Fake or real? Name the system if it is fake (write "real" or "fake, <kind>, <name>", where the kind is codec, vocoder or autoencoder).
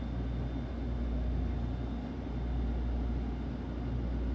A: real